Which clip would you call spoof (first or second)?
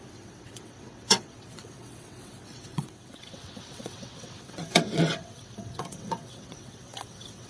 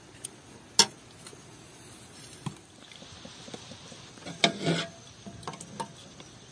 first